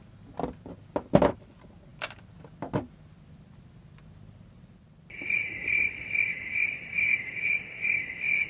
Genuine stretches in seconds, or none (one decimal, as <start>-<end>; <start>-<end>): 0.0-8.5